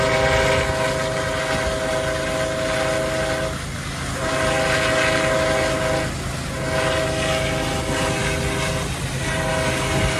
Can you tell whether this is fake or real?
real